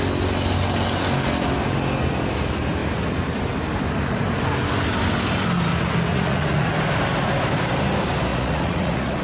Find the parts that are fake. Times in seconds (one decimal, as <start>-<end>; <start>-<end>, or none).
6.1-6.7; 8.3-9.2